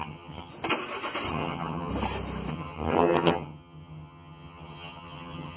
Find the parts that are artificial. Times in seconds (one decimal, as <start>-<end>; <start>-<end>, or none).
0.0-0.5; 1.3-1.9; 2.5-5.6